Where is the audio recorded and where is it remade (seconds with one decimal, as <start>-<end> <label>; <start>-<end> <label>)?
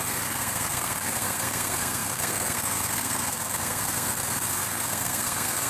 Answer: 0.0-5.7 remade